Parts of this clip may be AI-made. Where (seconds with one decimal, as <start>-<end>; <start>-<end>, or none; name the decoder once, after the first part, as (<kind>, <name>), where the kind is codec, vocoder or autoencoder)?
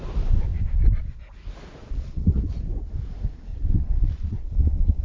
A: 1.8-2.4 (vocoder, Vocos); 3.5-5.0